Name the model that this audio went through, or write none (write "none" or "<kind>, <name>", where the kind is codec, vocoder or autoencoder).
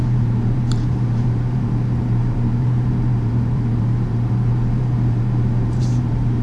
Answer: vocoder, BigVGAN v2